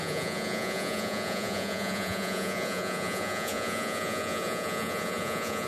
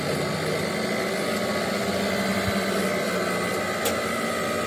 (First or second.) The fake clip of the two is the first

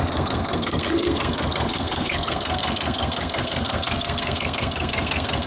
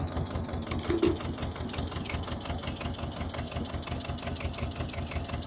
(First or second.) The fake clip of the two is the first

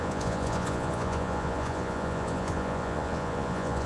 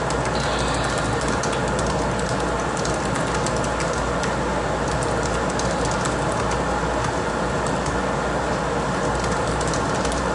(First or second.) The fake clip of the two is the first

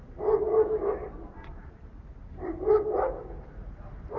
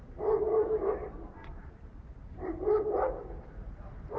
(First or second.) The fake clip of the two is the second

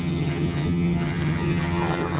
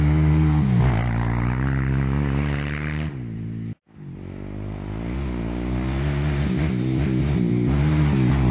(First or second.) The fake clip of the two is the first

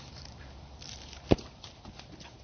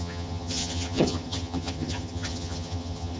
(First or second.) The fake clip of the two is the second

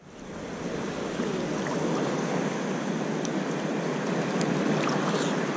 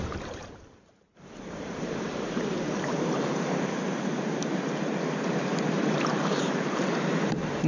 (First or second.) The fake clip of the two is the second